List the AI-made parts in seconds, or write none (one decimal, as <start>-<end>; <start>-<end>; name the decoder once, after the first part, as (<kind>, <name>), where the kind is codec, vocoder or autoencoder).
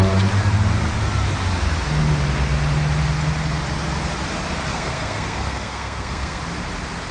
4.7-6.4 (codec, SNAC)